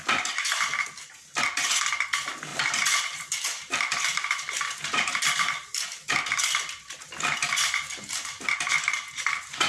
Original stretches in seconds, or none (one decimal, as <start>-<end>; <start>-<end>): 0.0-2.5; 5.2-7.4